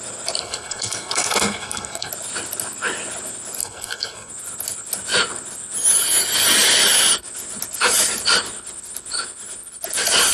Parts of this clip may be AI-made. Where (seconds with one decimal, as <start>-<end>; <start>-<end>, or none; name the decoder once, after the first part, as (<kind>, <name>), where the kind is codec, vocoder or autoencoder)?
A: 0.4-2.1 (codec, SNAC); 3.6-4.3

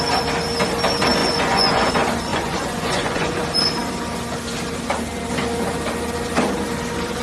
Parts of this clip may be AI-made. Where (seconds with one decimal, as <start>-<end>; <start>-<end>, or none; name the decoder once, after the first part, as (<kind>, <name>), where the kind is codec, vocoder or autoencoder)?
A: 1.2-1.9 (vocoder, Vocos); 2.3-3.4